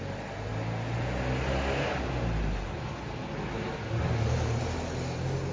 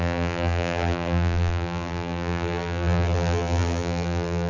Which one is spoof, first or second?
second